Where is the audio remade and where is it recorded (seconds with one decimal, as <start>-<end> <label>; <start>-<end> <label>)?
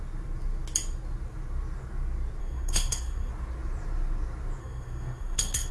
0.0-2.4 recorded; 2.4-3.3 remade; 3.3-4.6 recorded; 4.6-5.7 remade